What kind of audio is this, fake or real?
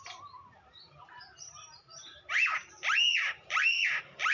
fake